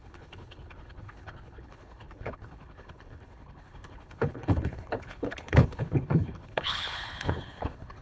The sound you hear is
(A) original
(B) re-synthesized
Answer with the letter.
B